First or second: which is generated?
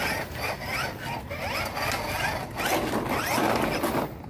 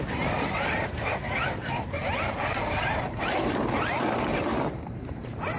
second